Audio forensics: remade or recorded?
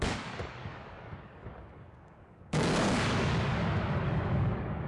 remade